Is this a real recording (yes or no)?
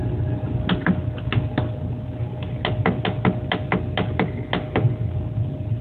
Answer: yes